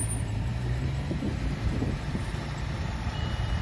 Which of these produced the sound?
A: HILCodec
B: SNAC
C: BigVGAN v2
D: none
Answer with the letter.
C